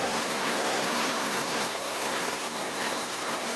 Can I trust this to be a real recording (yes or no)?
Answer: no